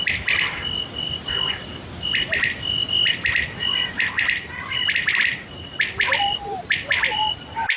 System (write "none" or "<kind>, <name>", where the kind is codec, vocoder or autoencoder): none